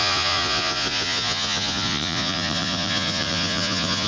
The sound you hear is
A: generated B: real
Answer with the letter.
A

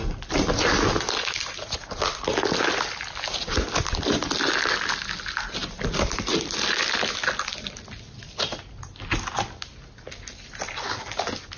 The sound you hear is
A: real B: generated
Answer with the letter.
A